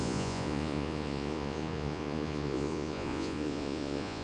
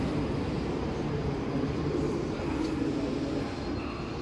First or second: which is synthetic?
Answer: first